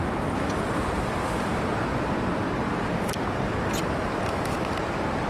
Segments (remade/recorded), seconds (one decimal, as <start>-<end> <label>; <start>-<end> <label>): 0.0-5.3 recorded